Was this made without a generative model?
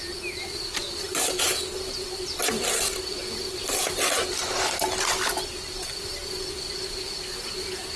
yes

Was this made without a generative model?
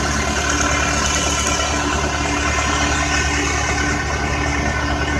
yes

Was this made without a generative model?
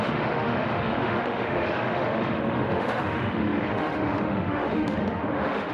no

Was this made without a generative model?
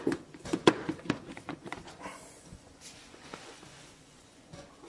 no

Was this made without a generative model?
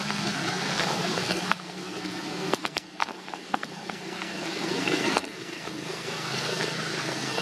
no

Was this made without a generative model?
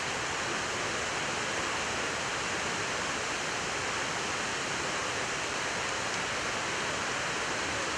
yes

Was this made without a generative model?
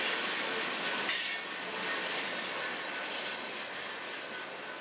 yes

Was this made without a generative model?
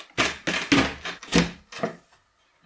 yes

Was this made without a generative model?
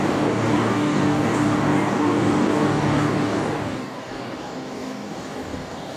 no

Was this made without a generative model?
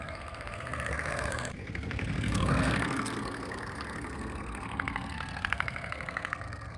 no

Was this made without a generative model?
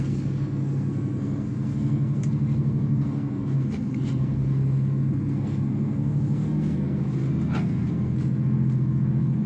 no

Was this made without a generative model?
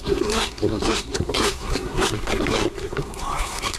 no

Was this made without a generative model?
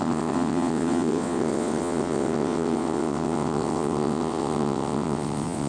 no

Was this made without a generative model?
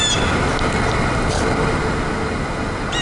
yes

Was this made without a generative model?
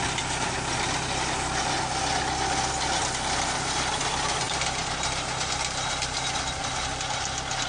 yes